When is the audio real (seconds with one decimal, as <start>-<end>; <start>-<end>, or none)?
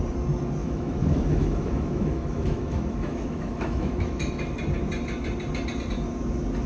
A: 0.0-0.6; 4.6-6.7